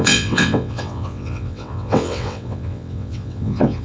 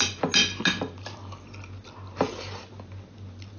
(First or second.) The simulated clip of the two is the first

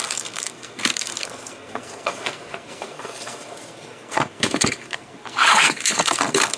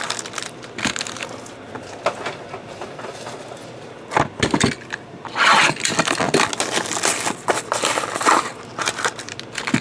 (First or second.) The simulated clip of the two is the first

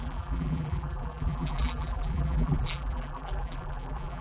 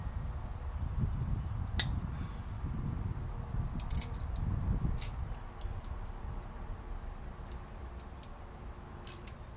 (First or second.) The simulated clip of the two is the first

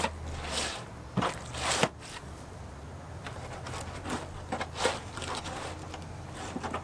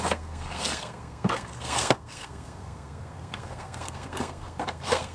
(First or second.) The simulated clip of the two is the second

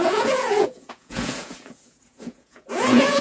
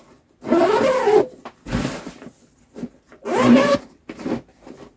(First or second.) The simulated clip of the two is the first